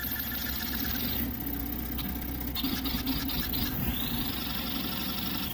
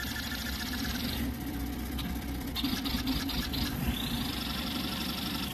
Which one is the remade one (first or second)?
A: second